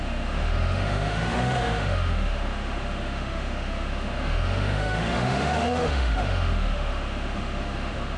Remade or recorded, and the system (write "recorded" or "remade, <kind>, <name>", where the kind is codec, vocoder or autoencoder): remade, autoencoder, DAC-VAE